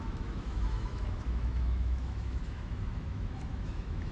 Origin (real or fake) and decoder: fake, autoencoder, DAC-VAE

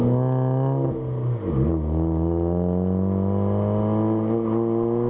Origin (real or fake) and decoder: real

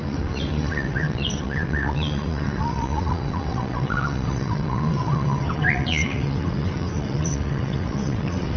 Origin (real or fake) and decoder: fake, vocoder, WaveNeXt